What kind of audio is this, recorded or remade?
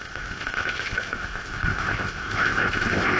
remade